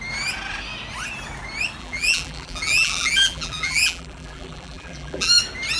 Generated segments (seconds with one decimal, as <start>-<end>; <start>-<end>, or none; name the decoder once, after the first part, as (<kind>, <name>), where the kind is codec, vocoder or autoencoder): 1.8-5.3 (vocoder, BigVGAN v2)